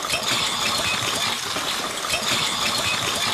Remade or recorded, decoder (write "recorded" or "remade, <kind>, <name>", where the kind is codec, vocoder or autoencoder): recorded